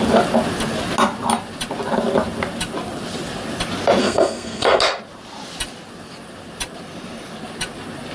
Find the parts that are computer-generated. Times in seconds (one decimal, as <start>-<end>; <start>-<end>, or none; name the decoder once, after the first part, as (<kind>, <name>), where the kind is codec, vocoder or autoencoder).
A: 4.0-4.8 (codec, SNAC)